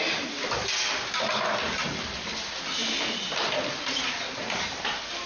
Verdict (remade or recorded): recorded